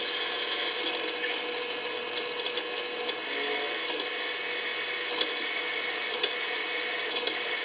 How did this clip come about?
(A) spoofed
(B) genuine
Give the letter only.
B